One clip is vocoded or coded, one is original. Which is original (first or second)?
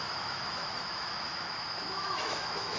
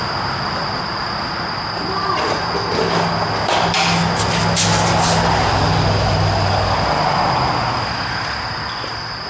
second